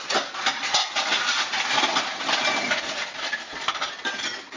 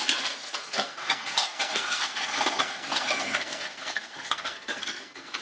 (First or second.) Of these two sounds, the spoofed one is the second